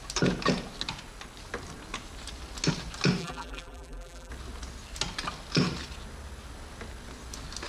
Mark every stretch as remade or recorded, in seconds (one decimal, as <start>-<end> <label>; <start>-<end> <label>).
0.0-3.2 recorded; 3.2-4.3 remade; 4.3-7.7 recorded